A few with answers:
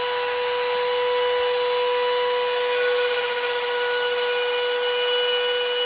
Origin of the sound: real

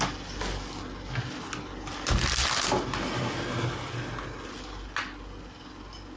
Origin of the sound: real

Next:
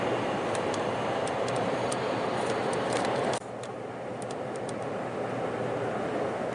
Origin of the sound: fake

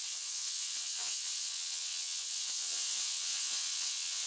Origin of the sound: fake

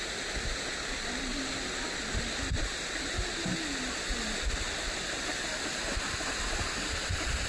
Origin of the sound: real